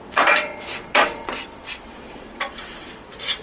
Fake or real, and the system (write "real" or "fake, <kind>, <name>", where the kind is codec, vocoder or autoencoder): fake, vocoder, WaveNeXt